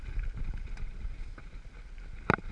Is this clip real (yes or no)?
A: yes